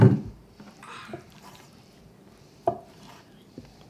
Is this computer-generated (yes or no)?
yes